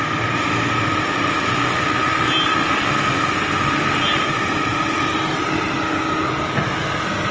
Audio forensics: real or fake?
real